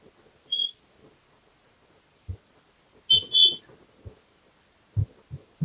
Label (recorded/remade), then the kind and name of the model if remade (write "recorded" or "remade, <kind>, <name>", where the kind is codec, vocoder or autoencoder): recorded